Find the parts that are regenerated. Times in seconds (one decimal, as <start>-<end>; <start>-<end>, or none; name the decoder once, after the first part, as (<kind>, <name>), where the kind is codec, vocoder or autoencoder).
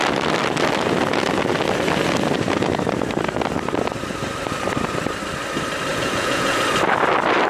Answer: 5.9-6.6 (vocoder, Vocos)